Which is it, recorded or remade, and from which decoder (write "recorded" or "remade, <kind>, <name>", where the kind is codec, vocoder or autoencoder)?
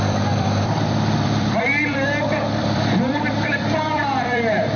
remade, vocoder, BigVGAN v2